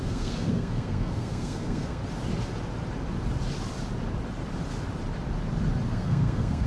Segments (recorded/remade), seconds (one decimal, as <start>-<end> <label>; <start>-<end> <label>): 0.0-2.0 remade; 2.0-5.9 recorded; 5.9-6.7 remade